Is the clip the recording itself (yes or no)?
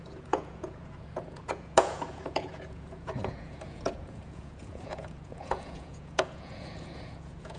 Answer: no